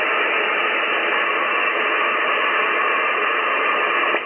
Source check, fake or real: real